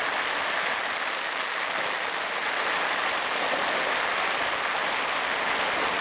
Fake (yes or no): no